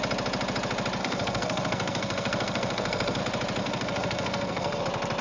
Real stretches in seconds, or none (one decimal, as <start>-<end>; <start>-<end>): 0.0-1.0; 3.2-3.6; 4.8-5.2